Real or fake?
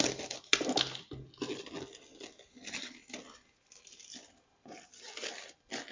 real